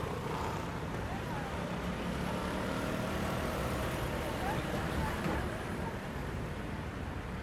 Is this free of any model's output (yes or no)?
no